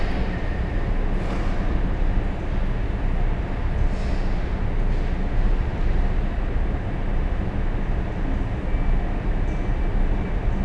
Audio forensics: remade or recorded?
recorded